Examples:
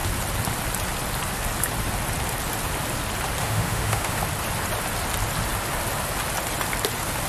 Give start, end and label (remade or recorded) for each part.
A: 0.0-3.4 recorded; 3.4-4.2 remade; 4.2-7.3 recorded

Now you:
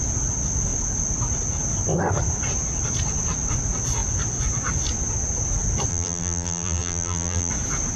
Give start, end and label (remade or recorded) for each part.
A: 0.0-5.9 recorded; 5.9-7.5 remade; 7.5-8.0 recorded

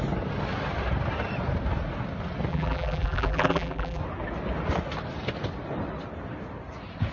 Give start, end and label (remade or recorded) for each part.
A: 0.0-2.5 recorded; 2.5-4.0 remade; 4.0-7.1 recorded

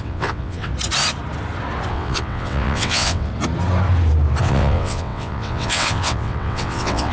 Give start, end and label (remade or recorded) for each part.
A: 0.0-0.7 remade; 0.7-1.9 recorded; 1.9-3.3 remade; 3.3-4.4 recorded; 4.4-7.1 remade

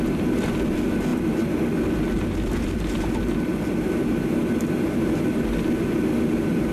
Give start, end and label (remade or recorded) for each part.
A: 0.0-6.7 recorded

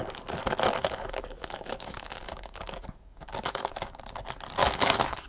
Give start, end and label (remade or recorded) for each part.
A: 0.0-0.8 recorded; 0.8-4.0 remade; 4.0-4.6 recorded; 4.6-5.3 remade